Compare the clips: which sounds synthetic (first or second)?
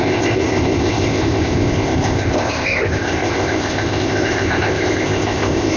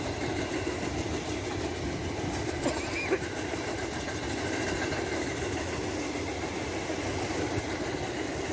first